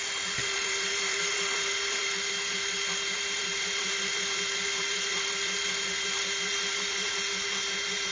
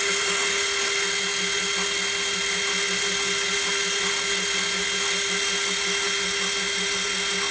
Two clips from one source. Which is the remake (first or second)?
first